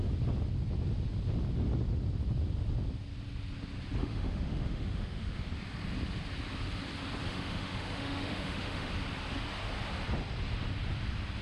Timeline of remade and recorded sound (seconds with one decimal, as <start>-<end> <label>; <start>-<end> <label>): 0.0-4.0 recorded; 4.0-5.5 remade; 5.5-7.2 recorded; 7.2-8.9 remade; 8.9-11.4 recorded